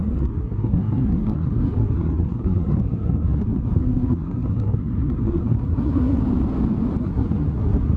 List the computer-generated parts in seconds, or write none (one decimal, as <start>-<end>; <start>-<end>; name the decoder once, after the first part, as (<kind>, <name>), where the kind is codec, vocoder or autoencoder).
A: 0.0-6.2 (codec, SNAC); 7.0-8.0